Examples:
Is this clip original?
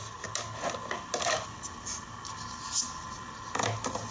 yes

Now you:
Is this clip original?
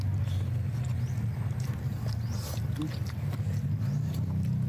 yes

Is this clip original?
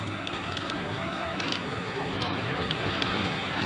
no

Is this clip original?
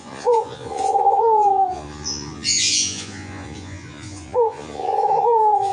no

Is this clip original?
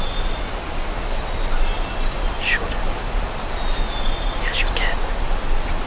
yes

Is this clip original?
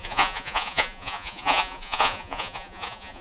no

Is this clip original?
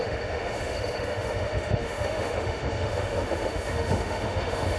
no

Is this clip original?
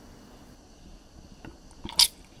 yes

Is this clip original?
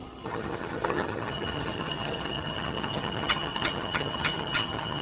no